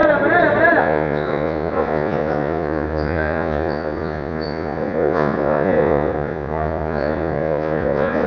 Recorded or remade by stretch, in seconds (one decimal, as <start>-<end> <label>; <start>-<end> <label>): 0.0-0.8 recorded; 0.8-8.3 remade